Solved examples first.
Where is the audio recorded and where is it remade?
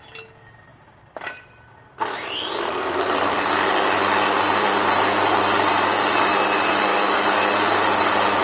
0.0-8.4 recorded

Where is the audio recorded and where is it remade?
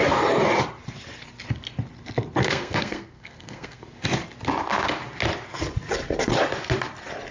0.0-2.4 recorded; 2.4-3.8 remade; 3.8-7.3 recorded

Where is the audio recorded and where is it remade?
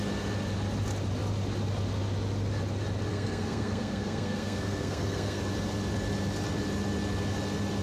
0.0-3.1 recorded; 3.1-5.4 remade; 5.4-7.8 recorded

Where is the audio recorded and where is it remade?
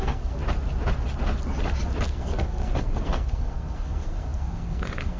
0.0-0.4 remade; 0.4-2.0 recorded; 2.0-5.2 remade